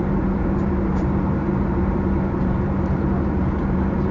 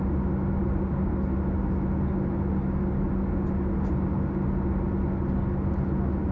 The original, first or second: second